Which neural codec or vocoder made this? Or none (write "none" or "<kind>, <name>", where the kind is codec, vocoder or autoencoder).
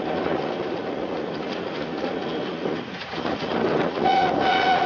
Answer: vocoder, Vocos